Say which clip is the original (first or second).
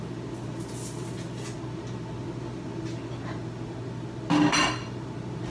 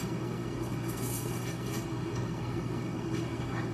first